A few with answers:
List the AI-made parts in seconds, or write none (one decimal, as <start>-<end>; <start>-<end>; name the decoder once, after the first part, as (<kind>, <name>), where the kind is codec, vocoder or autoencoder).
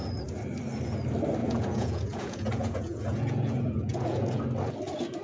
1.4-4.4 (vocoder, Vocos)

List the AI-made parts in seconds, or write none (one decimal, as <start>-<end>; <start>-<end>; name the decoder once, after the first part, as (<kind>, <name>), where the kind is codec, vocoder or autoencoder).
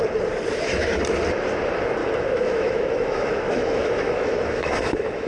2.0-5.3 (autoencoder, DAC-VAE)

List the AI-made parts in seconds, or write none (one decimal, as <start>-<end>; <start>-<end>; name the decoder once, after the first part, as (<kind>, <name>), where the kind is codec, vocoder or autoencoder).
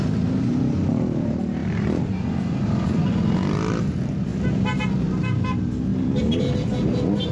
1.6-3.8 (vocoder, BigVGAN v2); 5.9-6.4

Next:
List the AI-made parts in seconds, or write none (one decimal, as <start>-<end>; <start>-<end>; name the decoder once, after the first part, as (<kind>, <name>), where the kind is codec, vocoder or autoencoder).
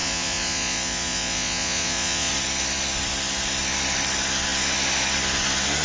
0.0-2.3 (vocoder, Vocos)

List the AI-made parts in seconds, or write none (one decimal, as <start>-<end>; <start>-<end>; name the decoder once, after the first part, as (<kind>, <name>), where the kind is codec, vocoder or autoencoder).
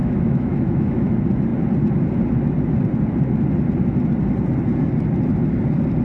0.0-1.1 (autoencoder, DAC-VAE)